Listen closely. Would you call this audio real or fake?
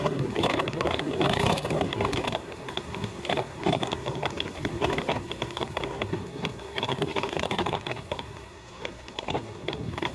fake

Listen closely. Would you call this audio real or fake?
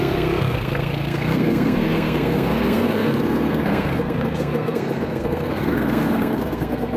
fake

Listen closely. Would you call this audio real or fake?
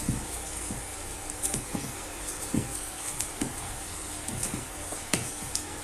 fake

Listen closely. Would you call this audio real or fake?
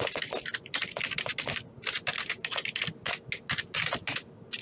real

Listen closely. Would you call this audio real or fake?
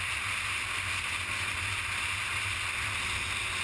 real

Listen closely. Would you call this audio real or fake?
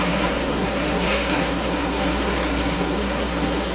fake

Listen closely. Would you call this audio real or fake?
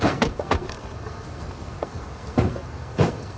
fake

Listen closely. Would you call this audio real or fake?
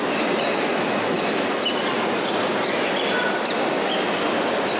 real